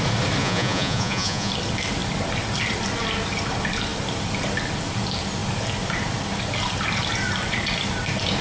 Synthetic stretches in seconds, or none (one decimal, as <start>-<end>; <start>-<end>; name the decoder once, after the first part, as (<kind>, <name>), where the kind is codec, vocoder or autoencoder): 0.4-1.5 (vocoder, Vocos)